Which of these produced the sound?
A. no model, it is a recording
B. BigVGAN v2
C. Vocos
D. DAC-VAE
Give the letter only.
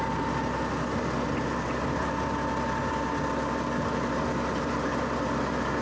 A